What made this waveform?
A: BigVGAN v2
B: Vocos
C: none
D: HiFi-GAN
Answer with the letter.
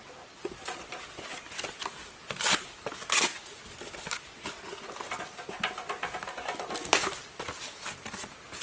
C